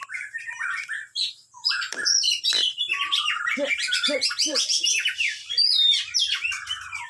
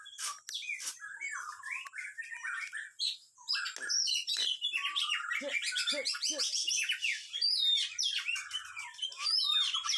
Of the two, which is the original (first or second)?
second